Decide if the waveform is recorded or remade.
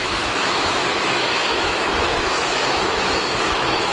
remade